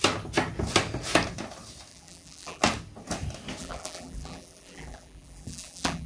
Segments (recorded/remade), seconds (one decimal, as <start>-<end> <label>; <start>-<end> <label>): 0.0-1.9 recorded; 1.9-2.6 remade; 2.6-3.6 recorded; 3.6-6.1 remade